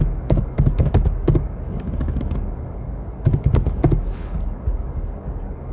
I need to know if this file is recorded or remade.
remade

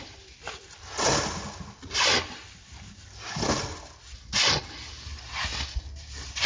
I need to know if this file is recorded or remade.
recorded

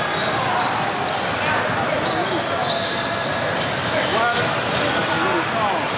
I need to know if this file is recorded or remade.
recorded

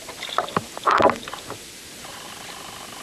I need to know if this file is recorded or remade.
recorded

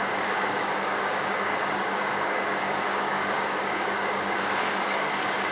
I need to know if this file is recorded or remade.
remade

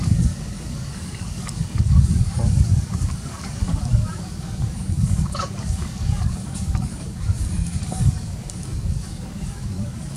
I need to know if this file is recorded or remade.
remade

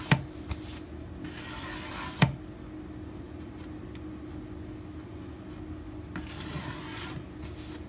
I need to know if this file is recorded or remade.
recorded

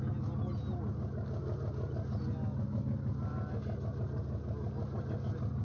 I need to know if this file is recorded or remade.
recorded